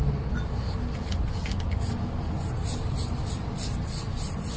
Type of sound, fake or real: real